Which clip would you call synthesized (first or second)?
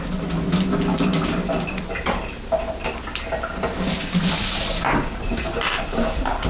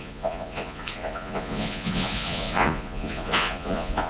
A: second